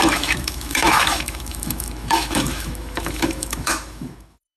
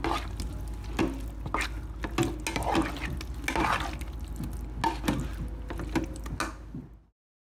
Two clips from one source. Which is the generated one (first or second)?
first